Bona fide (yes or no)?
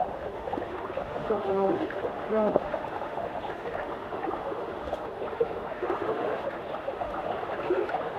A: no